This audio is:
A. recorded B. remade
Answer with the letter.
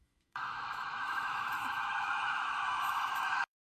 B